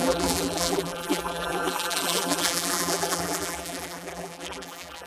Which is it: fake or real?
fake